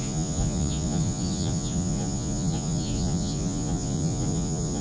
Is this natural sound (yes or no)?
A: no